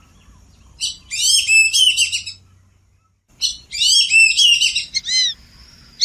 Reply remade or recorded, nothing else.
recorded